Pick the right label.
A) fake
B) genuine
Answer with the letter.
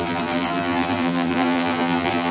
A